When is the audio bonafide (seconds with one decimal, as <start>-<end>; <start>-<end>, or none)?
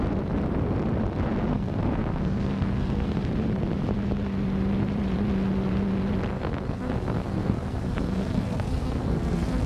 0.0-1.5; 3.3-6.3